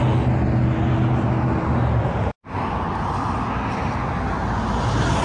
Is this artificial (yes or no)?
no